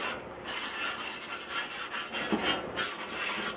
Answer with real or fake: real